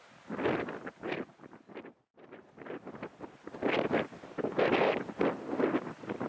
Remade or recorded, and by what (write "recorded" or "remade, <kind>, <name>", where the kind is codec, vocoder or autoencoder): recorded